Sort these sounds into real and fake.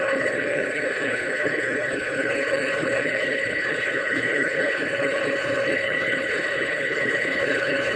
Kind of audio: fake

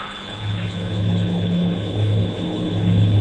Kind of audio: fake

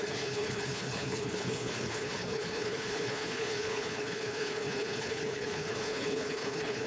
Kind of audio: fake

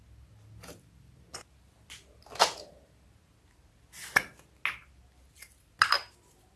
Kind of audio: real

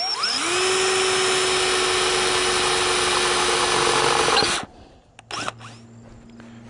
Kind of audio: real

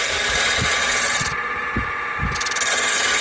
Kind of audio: real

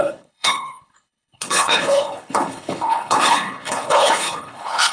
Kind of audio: fake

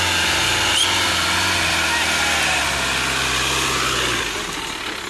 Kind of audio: real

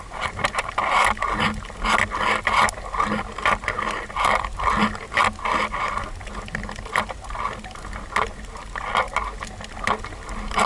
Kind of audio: real